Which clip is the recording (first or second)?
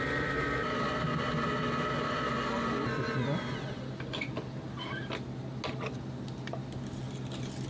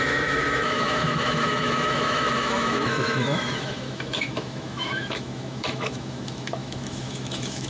first